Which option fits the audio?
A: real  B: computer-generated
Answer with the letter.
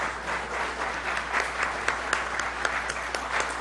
A